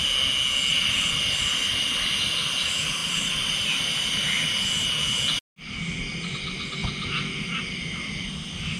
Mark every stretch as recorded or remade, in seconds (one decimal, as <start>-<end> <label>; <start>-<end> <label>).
0.0-0.7 recorded; 0.7-2.1 remade; 2.1-3.0 recorded; 3.0-3.5 remade; 3.5-6.8 recorded; 6.8-8.8 remade